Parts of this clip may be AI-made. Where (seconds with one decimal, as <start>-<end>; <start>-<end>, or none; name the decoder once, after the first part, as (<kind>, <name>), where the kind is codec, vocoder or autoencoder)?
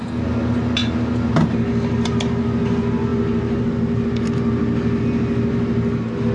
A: none